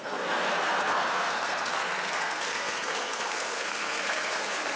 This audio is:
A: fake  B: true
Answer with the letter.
A